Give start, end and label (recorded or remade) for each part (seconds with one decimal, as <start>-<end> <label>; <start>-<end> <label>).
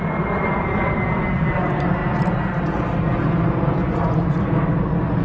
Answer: 0.0-5.2 recorded